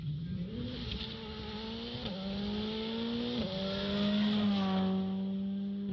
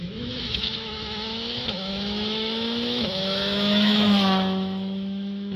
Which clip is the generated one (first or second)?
second